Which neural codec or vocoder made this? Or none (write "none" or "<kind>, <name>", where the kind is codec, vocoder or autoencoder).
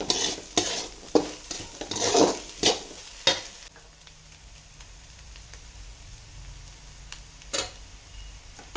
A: none